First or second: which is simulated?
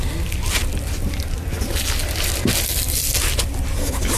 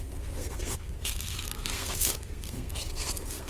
second